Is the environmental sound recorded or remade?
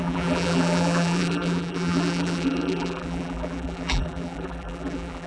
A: remade